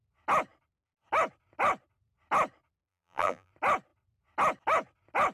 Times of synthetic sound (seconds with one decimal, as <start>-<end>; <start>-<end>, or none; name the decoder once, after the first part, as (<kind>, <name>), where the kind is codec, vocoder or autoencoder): 2.9-3.5 (vocoder, BigVGAN v2)